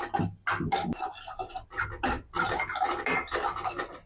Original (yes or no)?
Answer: yes